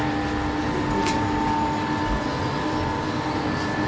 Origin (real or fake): real